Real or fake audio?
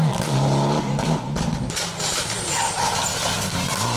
real